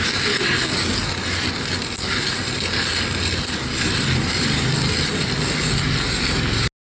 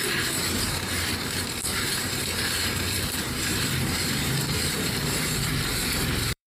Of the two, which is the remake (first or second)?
second